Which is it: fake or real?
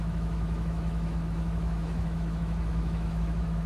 fake